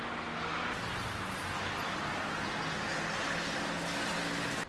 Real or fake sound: real